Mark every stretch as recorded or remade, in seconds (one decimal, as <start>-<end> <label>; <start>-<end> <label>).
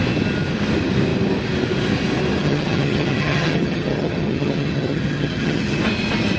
0.0-2.4 recorded; 2.4-5.8 remade; 5.8-6.4 recorded